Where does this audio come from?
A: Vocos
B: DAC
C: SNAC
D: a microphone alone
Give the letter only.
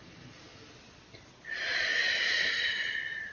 D